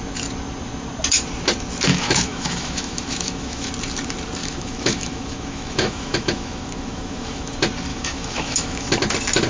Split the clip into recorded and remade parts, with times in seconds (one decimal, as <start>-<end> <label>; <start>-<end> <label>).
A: 0.0-1.9 recorded; 1.9-3.7 remade; 3.7-4.4 recorded; 4.4-7.5 remade; 7.5-7.9 recorded; 7.9-8.9 remade; 8.9-9.5 recorded

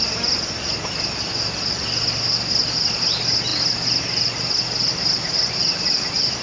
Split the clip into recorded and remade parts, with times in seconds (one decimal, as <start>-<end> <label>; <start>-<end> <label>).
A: 0.0-6.4 recorded